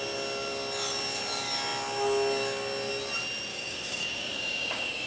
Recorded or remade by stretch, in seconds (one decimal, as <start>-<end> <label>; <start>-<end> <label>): 0.0-3.5 recorded; 3.5-5.1 remade